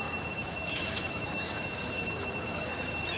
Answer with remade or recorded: remade